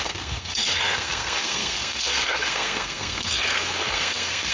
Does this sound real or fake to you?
fake